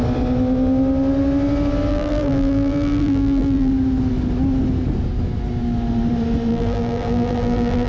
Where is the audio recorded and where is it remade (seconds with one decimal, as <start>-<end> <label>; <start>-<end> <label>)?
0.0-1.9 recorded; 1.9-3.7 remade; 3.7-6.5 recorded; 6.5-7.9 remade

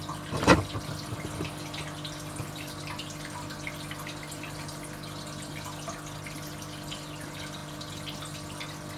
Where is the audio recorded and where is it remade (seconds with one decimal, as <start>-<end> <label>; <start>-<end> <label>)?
0.0-9.0 recorded

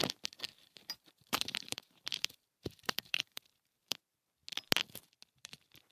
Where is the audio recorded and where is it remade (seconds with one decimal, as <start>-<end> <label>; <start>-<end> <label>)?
0.0-0.5 recorded; 0.5-4.0 remade; 4.0-5.9 recorded

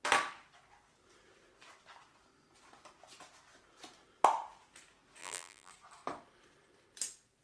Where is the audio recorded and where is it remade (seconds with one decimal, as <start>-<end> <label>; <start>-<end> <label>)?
0.0-5.2 recorded; 5.2-5.7 remade; 5.7-7.4 recorded

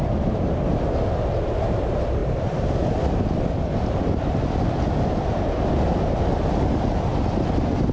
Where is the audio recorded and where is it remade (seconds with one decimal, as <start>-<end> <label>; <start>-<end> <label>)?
0.0-2.2 recorded; 2.2-5.3 remade; 5.3-7.9 recorded

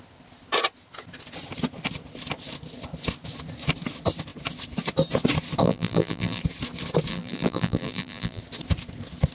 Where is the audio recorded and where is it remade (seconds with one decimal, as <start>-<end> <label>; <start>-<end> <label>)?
0.0-5.6 recorded; 5.6-6.4 remade; 6.4-7.1 recorded; 7.1-8.4 remade; 8.4-9.3 recorded